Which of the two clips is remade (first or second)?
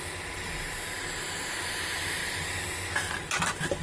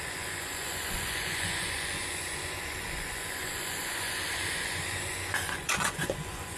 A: second